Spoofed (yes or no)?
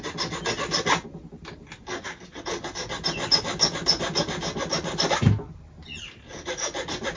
no